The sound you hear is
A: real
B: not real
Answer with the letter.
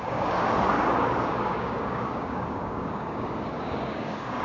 B